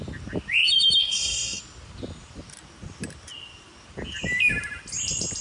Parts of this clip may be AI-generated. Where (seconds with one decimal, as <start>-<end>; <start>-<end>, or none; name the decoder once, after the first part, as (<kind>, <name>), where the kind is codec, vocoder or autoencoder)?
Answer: 1.0-1.6 (codec, SNAC)